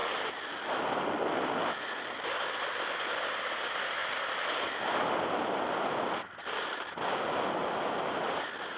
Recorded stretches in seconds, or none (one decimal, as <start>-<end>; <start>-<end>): 0.0-8.8